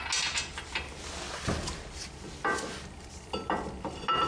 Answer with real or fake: real